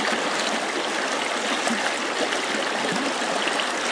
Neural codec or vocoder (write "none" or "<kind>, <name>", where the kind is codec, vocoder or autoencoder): none